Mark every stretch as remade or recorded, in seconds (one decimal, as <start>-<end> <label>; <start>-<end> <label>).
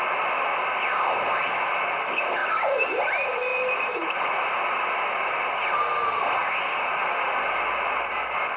0.0-2.4 recorded; 2.4-3.0 remade; 3.0-3.5 recorded; 3.5-5.0 remade; 5.0-8.6 recorded